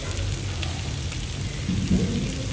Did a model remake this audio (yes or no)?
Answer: no